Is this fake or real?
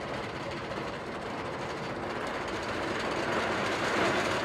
fake